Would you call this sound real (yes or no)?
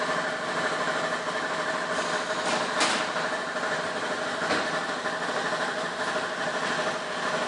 yes